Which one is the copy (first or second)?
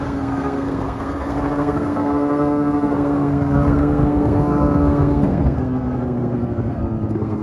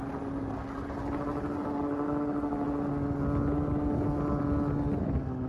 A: first